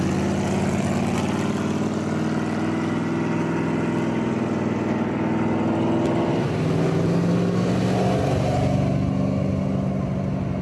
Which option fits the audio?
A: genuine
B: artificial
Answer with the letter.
A